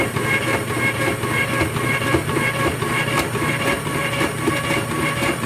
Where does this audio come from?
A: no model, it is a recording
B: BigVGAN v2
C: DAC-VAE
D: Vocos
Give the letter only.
A